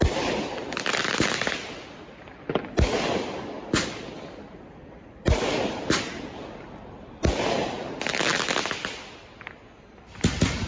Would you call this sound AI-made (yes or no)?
no